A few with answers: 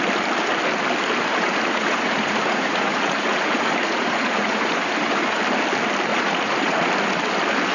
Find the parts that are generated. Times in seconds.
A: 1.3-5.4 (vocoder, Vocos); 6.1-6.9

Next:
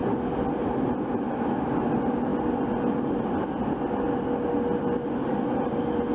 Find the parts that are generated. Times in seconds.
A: none

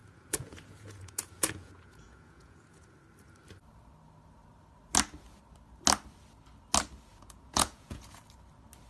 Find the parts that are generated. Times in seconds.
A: 0.0-3.0 (vocoder, Vocos); 7.1-8.2

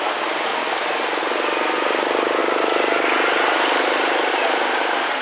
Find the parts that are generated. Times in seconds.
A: none

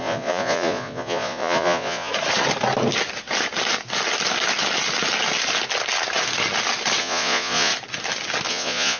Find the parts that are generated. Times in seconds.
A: 0.0-2.1 (vocoder, Vocos); 7.0-7.7; 8.5-9.0

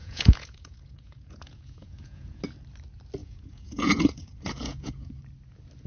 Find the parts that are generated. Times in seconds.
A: 0.0-2.4 (vocoder, Vocos); 3.2-5.2

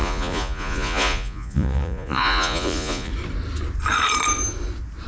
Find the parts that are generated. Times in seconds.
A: 0.0-3.1 (vocoder, Vocos)

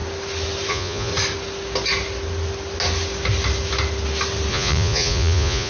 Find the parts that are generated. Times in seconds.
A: 0.7-1.1 (vocoder, Vocos); 4.5-5.7